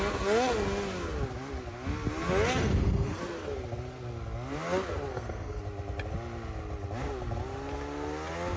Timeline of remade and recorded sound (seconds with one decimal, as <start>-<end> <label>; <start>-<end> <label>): 0.0-2.5 recorded; 2.5-3.2 remade; 3.2-5.1 recorded; 5.1-5.6 remade; 5.6-8.6 recorded